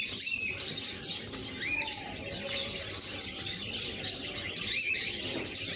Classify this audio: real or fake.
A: real